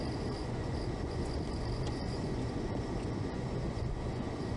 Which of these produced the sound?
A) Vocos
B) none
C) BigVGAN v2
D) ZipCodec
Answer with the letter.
A